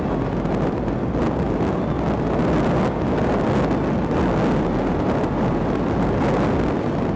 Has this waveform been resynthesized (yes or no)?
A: no